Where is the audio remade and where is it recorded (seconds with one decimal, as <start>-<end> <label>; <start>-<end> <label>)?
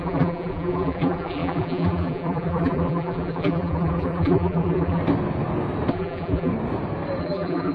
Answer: 0.0-5.0 remade; 5.0-5.9 recorded; 5.9-6.5 remade; 6.5-7.2 recorded; 7.2-7.7 remade